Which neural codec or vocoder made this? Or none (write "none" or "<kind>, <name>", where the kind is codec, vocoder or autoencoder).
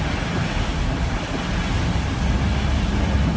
none